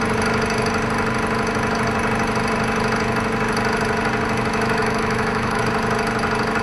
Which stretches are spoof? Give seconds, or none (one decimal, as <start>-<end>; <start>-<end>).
4.8-5.6